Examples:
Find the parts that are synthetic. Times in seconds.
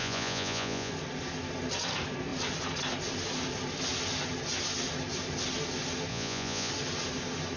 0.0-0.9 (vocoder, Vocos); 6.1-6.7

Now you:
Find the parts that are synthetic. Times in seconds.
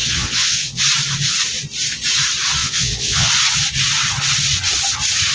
0.0-0.8 (vocoder, Vocos); 2.6-3.3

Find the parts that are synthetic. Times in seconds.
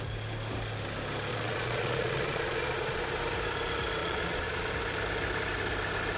1.3-3.0 (vocoder, Vocos); 4.0-4.7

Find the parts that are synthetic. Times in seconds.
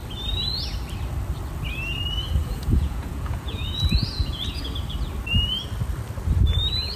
2.4-4.6 (vocoder, Vocos)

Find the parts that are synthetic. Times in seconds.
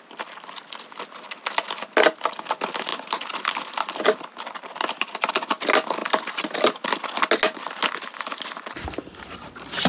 none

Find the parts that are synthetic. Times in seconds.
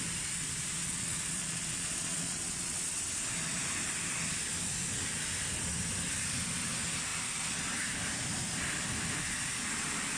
0.8-3.0 (vocoder, Vocos)